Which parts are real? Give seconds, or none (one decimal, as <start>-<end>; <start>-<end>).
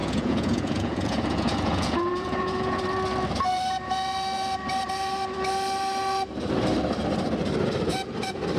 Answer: 2.8-8.6